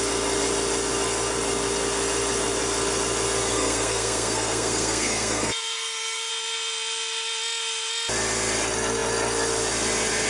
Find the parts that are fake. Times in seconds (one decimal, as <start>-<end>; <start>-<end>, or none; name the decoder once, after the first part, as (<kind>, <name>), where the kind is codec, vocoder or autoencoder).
3.5-6.3 (codec, SNAC)